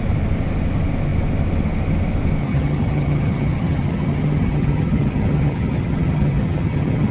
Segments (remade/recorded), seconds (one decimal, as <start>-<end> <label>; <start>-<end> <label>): 0.0-2.4 recorded; 2.4-7.1 remade